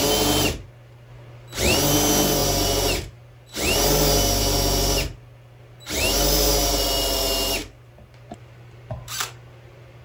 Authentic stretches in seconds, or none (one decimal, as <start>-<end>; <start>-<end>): 0.0-10.0